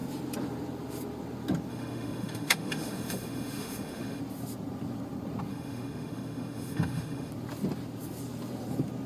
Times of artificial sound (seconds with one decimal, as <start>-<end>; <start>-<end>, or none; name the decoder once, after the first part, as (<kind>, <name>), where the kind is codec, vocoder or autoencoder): 1.7-4.2 (autoencoder, DAC-VAE); 5.5-7.3